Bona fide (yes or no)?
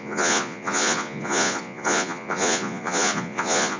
no